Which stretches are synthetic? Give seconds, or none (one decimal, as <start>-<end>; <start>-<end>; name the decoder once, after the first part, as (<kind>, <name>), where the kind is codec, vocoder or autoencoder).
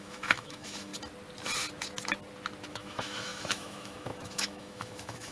0.0-0.9 (autoencoder, DAC-VAE); 2.7-5.3